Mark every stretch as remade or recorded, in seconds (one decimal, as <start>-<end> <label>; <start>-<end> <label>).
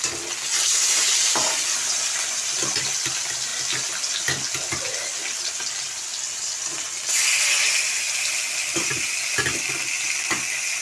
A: 0.0-10.8 recorded